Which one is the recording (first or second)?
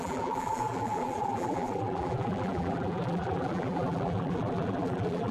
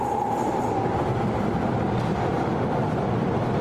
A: second